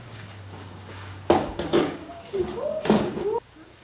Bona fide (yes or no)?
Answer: no